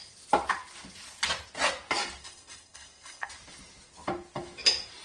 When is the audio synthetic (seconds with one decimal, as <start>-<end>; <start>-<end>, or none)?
2.2-3.3